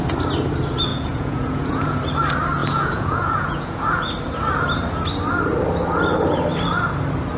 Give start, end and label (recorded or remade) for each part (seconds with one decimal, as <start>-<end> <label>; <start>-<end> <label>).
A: 0.0-0.9 recorded; 0.9-2.0 remade; 2.0-2.6 recorded; 2.6-4.0 remade; 4.0-7.4 recorded